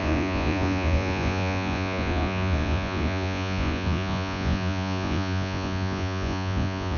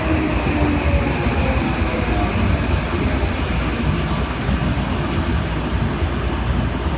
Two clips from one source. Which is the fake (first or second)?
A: first